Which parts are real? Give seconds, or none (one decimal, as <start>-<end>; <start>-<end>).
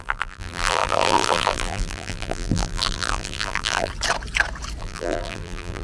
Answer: 3.9-4.8